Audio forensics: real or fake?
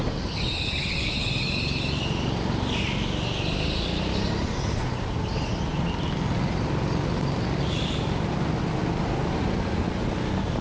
real